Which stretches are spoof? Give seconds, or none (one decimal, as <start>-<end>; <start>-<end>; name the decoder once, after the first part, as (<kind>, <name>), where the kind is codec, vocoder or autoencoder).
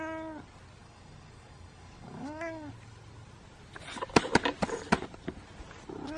0.8-2.7 (codec, DAC)